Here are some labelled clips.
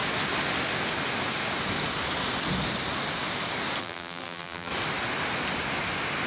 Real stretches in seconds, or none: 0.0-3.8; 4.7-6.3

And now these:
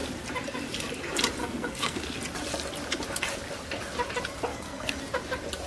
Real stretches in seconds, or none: 0.0-1.4; 2.0-4.5; 5.0-5.7

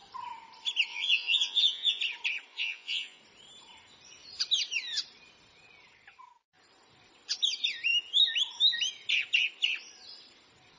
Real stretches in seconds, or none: 0.0-0.9; 2.0-2.5; 3.2-10.8

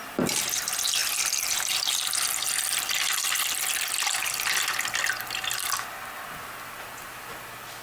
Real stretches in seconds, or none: 0.0-1.0; 1.6-7.8

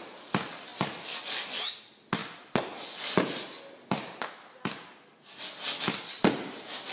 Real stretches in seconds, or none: 0.0-6.9

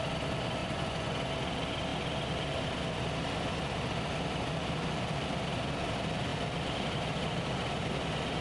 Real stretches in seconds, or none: 0.0-0.6; 1.3-8.4